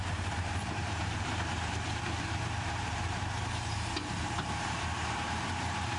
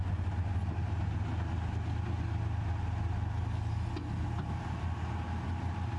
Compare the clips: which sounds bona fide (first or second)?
second